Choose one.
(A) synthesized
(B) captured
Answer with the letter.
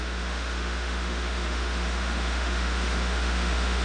A